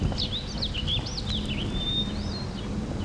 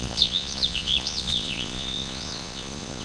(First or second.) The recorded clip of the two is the first